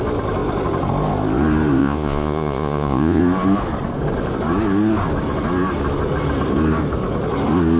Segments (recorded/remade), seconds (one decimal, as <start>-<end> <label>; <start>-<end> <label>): 0.0-1.8 recorded; 1.8-3.2 remade; 3.2-7.8 recorded